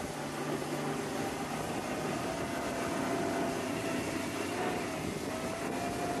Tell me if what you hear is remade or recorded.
recorded